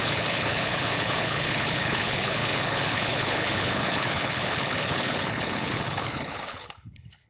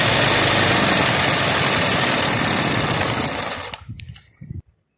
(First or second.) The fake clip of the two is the first